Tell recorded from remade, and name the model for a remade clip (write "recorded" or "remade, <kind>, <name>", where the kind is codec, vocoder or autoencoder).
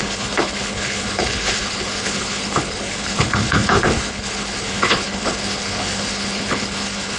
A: remade, codec, HILCodec